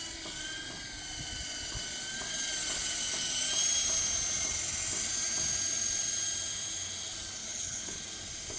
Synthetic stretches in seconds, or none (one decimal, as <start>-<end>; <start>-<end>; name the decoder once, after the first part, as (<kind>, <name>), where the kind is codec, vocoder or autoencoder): 7.4-8.0 (codec, HILCodec)